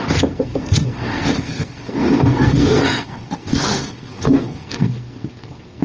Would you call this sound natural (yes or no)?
no